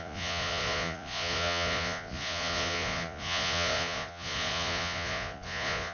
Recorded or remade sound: remade